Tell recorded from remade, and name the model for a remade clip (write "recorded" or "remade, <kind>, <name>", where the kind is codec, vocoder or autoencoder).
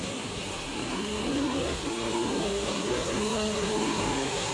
remade, codec, SNAC